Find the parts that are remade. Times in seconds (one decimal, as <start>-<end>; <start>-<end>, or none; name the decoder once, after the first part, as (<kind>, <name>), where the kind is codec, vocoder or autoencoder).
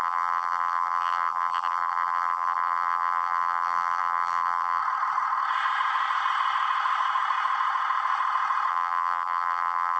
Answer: 0.0-4.8 (vocoder, BigVGAN v2); 8.7-10.0